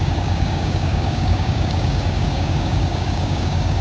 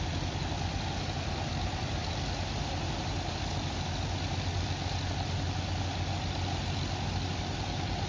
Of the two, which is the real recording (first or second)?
second